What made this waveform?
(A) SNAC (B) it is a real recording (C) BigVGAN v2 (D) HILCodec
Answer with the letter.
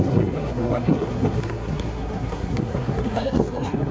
A